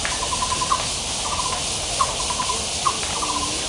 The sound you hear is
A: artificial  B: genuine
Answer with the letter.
B